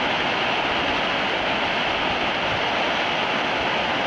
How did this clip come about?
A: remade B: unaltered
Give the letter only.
B